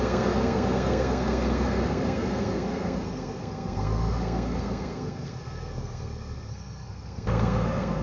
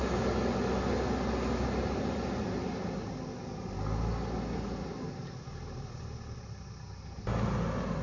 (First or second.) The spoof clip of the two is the first